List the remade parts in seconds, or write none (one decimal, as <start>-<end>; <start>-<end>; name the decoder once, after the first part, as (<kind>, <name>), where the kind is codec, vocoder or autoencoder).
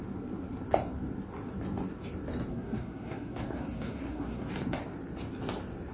2.5-4.5 (codec, SNAC)